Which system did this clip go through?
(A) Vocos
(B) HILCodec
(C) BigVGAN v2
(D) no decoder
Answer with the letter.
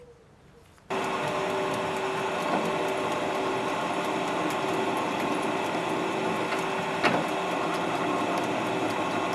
D